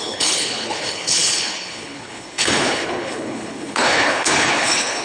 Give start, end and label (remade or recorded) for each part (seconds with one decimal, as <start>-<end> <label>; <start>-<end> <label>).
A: 0.0-5.0 remade